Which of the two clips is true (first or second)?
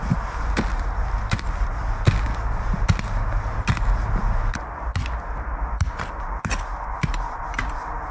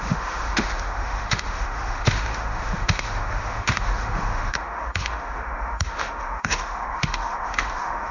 first